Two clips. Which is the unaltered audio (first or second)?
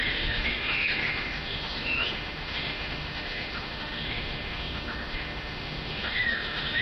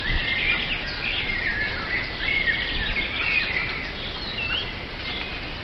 second